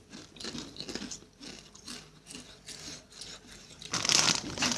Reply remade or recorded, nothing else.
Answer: recorded